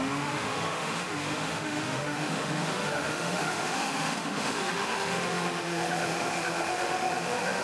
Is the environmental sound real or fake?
fake